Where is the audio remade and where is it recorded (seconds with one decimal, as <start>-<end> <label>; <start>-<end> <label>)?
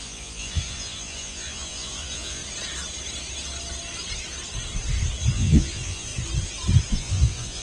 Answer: 0.0-2.4 remade; 2.4-5.3 recorded; 5.3-6.1 remade; 6.1-6.9 recorded; 6.9-7.6 remade